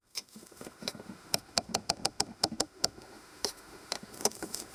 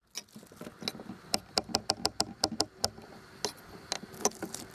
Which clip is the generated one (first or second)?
first